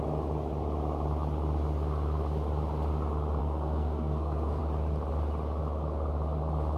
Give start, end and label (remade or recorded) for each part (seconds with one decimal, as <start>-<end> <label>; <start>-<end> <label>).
0.0-3.4 recorded; 3.4-4.6 remade; 4.6-6.8 recorded

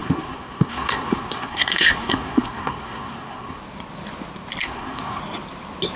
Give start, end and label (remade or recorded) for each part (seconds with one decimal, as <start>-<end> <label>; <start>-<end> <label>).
0.0-3.6 remade; 3.6-4.6 recorded; 4.6-5.2 remade; 5.2-6.0 recorded

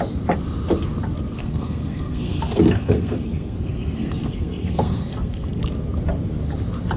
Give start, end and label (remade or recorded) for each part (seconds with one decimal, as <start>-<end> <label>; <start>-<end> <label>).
0.0-1.4 recorded; 1.4-5.6 remade; 5.6-7.0 recorded

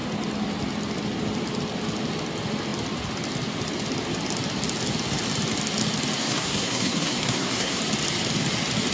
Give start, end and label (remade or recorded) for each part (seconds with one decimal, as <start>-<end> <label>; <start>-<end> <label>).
0.0-6.2 recorded; 6.2-7.8 remade; 7.8-8.9 recorded

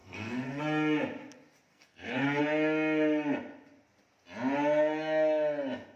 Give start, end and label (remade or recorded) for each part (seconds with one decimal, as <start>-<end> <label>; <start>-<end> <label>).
0.0-0.6 remade; 0.6-1.7 recorded; 1.7-2.4 remade; 2.4-6.0 recorded